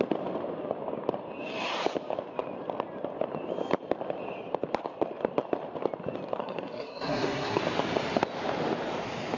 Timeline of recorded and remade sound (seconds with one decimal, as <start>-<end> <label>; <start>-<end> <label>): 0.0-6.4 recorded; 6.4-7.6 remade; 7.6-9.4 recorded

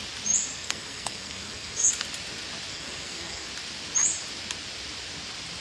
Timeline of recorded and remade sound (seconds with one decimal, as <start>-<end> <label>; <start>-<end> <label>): 0.0-0.5 recorded; 0.5-1.9 remade; 1.9-2.7 recorded; 2.7-3.5 remade; 3.5-5.6 recorded

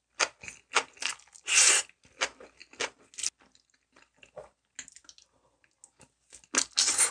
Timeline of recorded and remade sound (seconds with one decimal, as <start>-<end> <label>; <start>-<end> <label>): 0.0-7.1 recorded

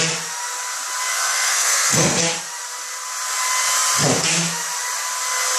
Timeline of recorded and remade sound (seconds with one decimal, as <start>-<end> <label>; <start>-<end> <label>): 0.0-1.1 recorded; 1.1-2.2 remade; 2.2-5.6 recorded